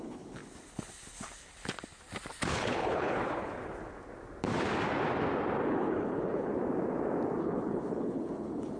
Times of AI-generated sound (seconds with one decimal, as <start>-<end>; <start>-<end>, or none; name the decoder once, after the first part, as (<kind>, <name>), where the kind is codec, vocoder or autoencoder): 0.0-0.4 (codec, HILCodec); 2.5-3.6; 5.7-6.6; 7.4-8.8